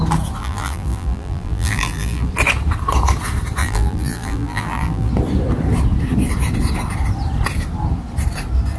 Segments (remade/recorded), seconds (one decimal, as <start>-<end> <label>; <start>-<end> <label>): 0.0-0.4 recorded; 0.4-2.3 remade; 2.3-3.6 recorded; 3.6-5.1 remade; 5.1-8.8 recorded